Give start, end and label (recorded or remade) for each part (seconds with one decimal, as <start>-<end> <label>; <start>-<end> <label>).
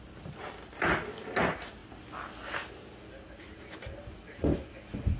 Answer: 0.0-5.2 recorded